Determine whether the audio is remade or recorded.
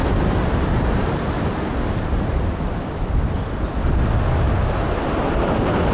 recorded